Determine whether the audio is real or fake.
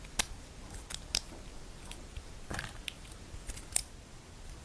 real